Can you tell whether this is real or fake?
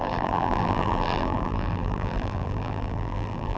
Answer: fake